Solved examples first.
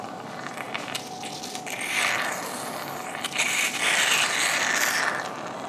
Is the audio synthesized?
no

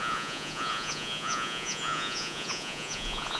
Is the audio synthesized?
yes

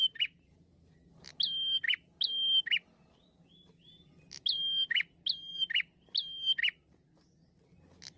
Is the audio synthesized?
no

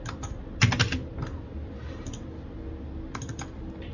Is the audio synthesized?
no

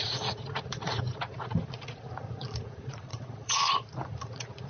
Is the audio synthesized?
yes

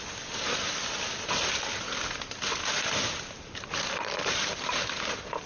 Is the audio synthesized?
no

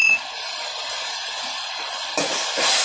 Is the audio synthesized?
no